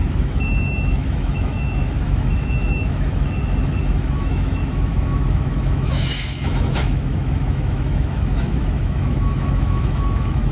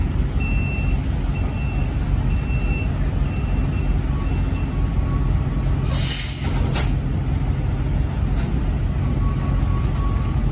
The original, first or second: second